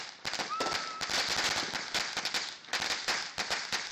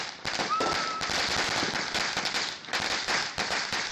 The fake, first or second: second